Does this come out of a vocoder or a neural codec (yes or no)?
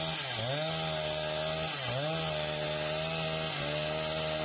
no